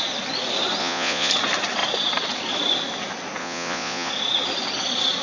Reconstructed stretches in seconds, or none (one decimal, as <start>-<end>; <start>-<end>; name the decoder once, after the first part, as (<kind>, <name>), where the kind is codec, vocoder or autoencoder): 0.8-1.3 (vocoder, Vocos); 3.4-4.1